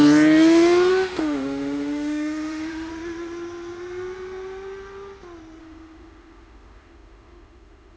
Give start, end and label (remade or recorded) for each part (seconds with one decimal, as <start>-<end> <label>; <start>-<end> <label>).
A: 0.0-0.9 recorded; 0.9-2.9 remade; 2.9-5.6 recorded; 5.6-8.0 remade